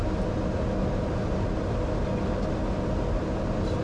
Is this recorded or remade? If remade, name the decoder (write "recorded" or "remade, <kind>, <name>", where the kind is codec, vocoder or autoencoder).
recorded